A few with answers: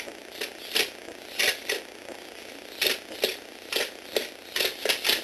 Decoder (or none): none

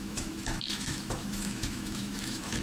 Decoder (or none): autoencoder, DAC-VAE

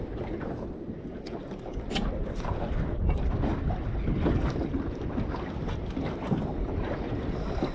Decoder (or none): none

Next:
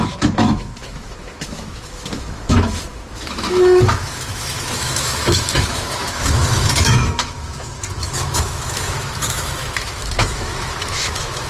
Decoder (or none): autoencoder, DAC-VAE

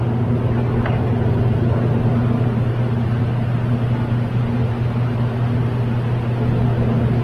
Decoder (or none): none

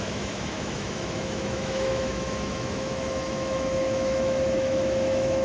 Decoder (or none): autoencoder, DAC-VAE